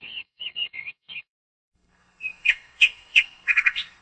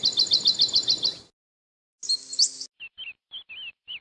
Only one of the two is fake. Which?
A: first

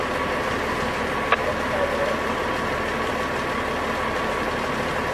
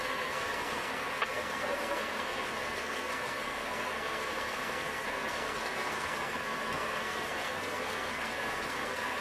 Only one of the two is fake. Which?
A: second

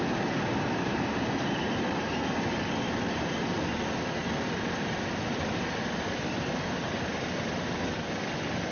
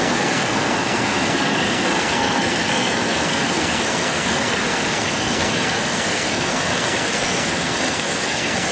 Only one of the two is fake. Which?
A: second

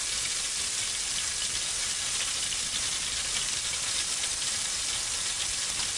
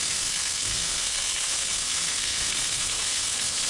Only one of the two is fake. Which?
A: second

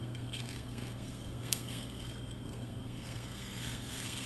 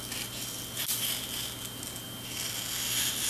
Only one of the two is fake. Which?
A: first